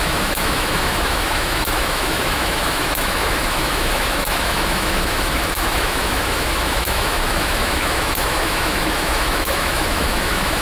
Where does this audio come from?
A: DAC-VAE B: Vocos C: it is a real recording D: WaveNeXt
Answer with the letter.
A